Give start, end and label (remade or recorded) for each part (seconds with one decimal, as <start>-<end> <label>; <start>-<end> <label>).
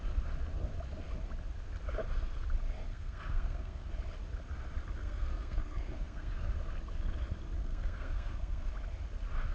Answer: 0.0-2.9 recorded; 2.9-3.9 remade; 3.9-5.0 recorded; 5.0-6.5 remade; 6.5-7.6 recorded; 7.6-8.7 remade; 8.7-9.5 recorded